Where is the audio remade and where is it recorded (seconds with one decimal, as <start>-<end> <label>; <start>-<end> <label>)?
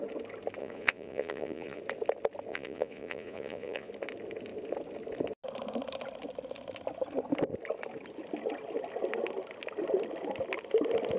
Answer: 0.0-0.6 recorded; 0.6-1.8 remade; 1.8-2.5 recorded; 2.5-3.9 remade; 3.9-11.2 recorded